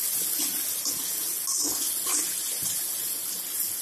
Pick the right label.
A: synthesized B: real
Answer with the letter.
B